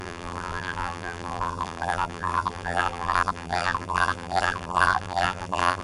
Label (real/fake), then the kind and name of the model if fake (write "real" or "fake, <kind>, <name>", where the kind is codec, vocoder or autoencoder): fake, vocoder, BigVGAN v2